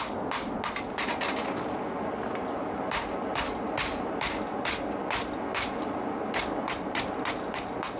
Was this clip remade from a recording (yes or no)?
no